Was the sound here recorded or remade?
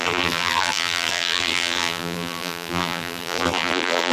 remade